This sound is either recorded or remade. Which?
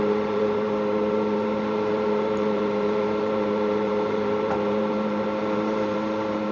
remade